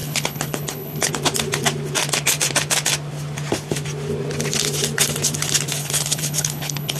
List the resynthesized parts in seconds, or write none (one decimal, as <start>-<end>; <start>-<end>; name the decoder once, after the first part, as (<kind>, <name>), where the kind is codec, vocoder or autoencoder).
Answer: 0.0-1.1 (codec, HILCodec); 5.8-7.0